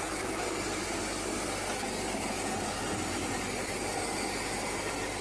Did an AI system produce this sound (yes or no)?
no